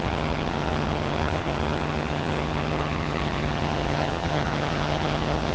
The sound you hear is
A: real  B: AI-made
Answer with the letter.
B